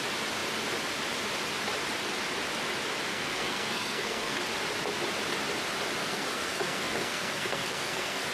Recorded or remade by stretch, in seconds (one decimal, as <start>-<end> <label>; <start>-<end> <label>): 0.0-3.1 recorded; 3.1-4.4 remade; 4.4-6.0 recorded; 6.0-8.3 remade